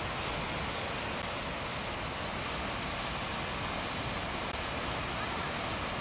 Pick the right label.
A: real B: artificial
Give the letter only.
A